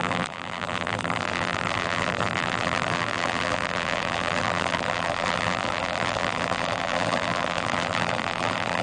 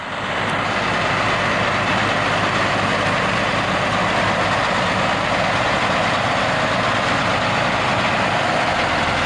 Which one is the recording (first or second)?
second